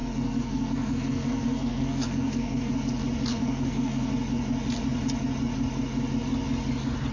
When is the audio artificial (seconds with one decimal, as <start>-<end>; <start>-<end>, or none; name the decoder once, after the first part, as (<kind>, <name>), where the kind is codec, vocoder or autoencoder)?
0.0-2.7 (codec, SNAC); 3.3-4.1